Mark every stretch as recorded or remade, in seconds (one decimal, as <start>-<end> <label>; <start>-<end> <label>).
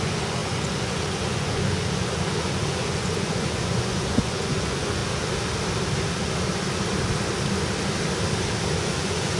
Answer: 0.0-5.0 remade; 5.0-8.7 recorded; 8.7-9.4 remade